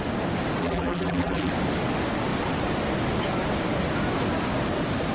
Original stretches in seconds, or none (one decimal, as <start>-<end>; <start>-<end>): 0.0-0.6; 1.5-5.1

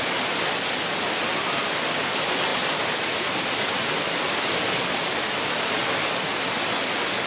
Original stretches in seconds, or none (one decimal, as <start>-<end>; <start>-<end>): 0.0-7.3

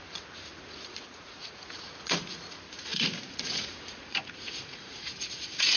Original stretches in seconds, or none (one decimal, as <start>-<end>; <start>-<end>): none

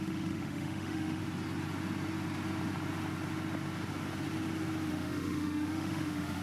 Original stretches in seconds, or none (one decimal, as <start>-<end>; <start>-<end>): 1.2-4.9